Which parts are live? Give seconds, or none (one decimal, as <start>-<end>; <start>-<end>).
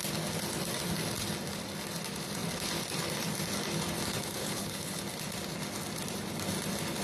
0.0-4.4; 5.0-7.0